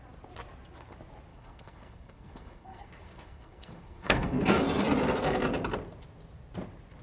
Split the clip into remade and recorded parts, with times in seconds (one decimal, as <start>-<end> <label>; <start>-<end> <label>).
0.0-1.3 recorded; 1.3-4.6 remade; 4.6-7.0 recorded